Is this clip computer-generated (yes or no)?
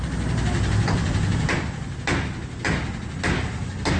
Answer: no